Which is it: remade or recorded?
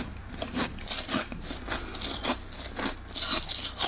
recorded